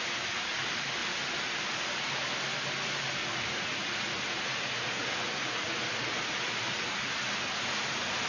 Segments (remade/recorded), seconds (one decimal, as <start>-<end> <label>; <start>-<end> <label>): 0.0-3.2 recorded; 3.2-6.8 remade; 6.8-8.3 recorded